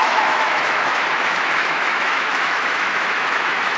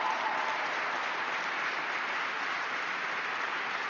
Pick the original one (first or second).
second